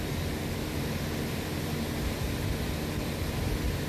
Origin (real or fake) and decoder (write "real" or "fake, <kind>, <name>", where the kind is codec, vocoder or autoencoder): real